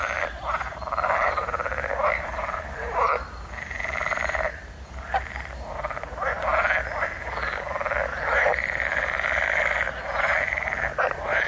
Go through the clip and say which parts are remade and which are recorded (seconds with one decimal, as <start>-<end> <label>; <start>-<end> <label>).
0.0-6.5 remade; 6.5-10.2 recorded; 10.2-11.5 remade